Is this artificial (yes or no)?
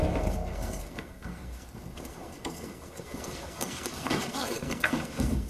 yes